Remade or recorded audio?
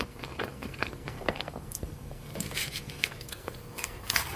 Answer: remade